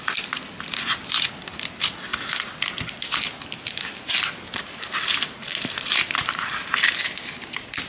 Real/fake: real